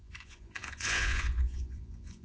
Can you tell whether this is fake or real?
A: fake